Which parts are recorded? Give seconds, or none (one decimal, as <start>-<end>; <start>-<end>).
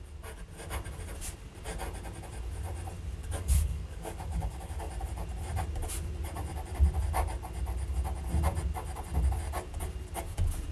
0.0-3.2; 4.9-10.7